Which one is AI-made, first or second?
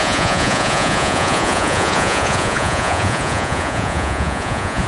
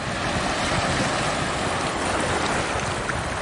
first